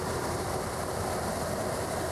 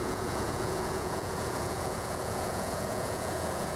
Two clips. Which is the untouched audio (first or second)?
first